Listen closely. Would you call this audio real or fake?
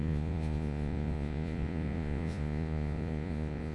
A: fake